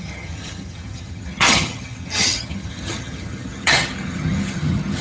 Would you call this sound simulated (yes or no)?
yes